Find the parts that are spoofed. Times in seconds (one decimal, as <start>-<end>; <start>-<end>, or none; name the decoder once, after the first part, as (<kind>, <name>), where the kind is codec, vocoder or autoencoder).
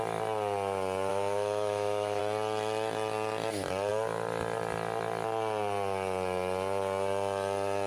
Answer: 1.1-2.2 (autoencoder, DAC-VAE)